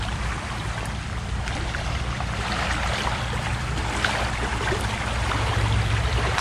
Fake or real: fake